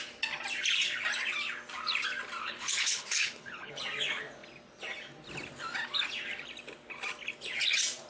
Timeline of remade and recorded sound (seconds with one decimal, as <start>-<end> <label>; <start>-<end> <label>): 0.0-2.4 recorded; 2.4-3.7 remade; 3.7-8.1 recorded